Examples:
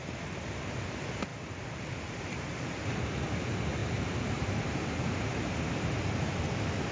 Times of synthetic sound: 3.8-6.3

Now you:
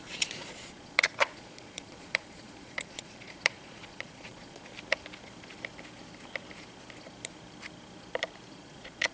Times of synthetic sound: 0.0-4.7; 8.5-9.1

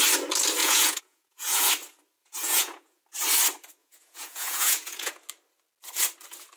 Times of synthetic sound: 0.6-1.7; 2.2-3.0; 3.8-5.1

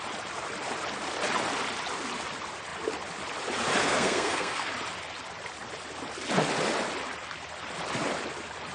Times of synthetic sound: 3.8-4.7

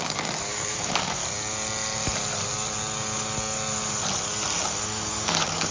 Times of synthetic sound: 0.0-1.2; 4.6-5.7

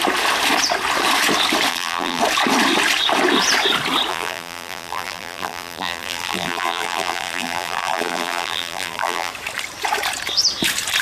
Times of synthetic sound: 1.7-2.2; 4.1-9.3

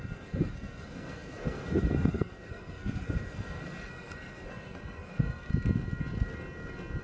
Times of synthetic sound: 0.0-5.5

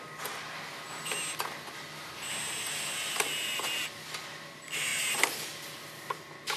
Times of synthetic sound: none